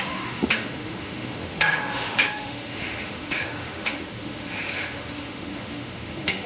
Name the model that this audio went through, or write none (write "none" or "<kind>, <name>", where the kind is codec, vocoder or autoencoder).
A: autoencoder, DAC-VAE